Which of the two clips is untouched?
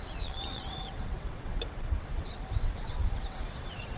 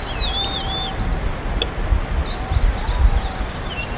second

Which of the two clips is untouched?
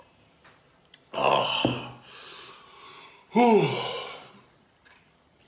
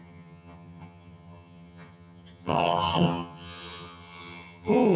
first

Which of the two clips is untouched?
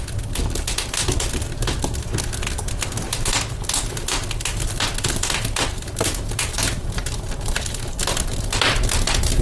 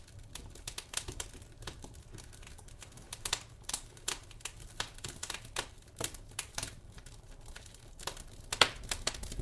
first